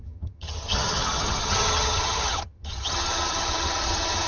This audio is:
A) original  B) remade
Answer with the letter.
B